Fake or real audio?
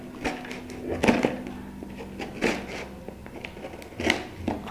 real